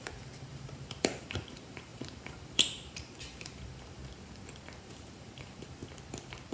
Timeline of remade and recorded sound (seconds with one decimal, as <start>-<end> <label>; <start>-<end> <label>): 0.0-4.0 remade; 4.0-4.8 recorded; 4.8-5.8 remade; 5.8-6.5 recorded